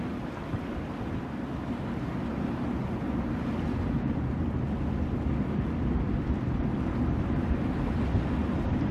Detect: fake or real real